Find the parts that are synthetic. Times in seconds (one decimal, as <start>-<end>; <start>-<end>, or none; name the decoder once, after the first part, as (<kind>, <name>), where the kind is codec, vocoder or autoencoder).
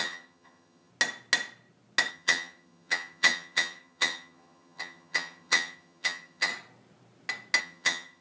0.0-0.9 (vocoder, HiFi-GAN); 2.1-6.5; 7.6-8.2